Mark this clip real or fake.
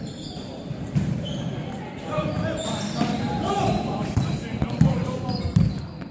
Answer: real